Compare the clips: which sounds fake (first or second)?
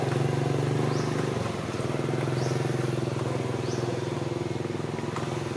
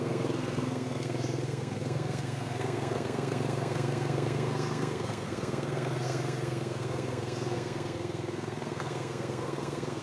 second